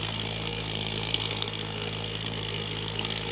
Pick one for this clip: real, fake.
fake